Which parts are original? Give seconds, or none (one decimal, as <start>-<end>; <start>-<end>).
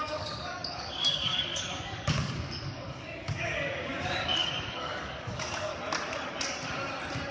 5.7-7.3